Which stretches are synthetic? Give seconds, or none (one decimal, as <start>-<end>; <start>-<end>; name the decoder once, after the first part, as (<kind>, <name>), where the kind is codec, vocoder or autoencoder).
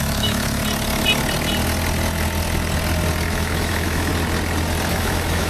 0.0-0.6 (autoencoder, DAC-VAE); 3.3-4.1; 4.9-5.5